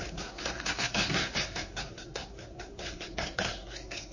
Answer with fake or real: fake